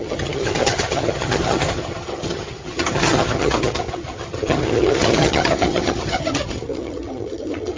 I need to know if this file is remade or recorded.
remade